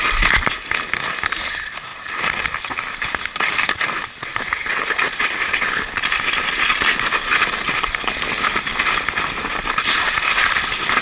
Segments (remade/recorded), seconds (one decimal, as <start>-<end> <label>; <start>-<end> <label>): 0.0-11.0 recorded